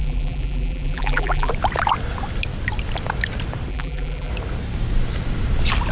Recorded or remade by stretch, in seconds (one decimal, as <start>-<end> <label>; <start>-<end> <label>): 0.0-1.5 remade; 1.5-3.7 recorded; 3.7-4.3 remade; 4.3-5.9 recorded